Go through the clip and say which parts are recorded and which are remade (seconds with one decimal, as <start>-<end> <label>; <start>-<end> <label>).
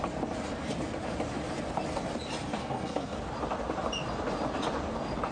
0.0-2.6 recorded; 2.6-3.2 remade; 3.2-5.3 recorded